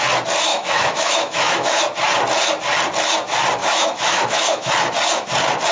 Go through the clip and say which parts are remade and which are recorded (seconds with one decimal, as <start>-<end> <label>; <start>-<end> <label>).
0.0-0.5 recorded; 0.5-1.8 remade; 1.8-3.6 recorded; 3.6-4.7 remade; 4.7-5.7 recorded